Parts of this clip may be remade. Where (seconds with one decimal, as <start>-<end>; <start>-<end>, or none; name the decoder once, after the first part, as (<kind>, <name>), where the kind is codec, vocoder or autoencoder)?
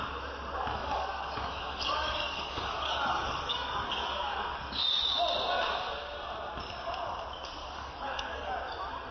0.8-5.0 (codec, DAC); 7.6-8.5